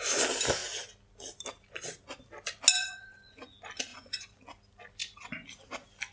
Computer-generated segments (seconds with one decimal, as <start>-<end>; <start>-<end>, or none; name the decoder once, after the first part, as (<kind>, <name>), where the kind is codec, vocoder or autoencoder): 2.8-3.5 (vocoder, Vocos); 3.9-4.4